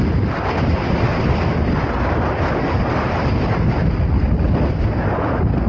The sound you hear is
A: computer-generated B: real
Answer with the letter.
B